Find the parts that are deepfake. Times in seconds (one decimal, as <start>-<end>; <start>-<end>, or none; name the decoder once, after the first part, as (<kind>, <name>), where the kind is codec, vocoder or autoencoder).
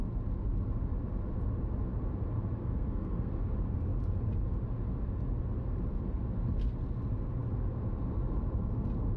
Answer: 2.6-3.3 (codec, SNAC)